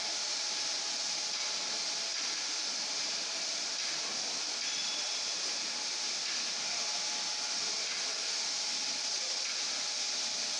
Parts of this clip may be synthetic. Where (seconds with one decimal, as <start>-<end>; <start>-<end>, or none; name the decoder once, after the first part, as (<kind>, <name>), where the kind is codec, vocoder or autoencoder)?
none